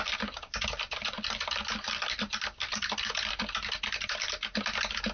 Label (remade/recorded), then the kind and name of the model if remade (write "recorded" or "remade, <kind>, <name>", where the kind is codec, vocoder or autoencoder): recorded